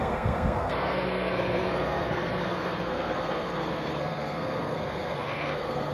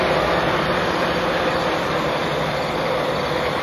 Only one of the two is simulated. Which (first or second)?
first